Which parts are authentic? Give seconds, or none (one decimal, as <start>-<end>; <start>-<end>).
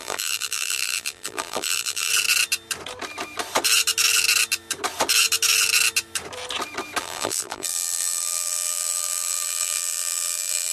2.1-7.0